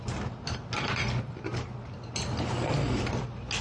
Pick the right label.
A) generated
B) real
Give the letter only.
B